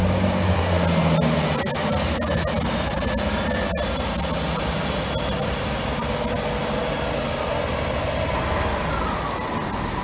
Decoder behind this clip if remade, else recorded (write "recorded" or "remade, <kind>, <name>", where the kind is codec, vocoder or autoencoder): recorded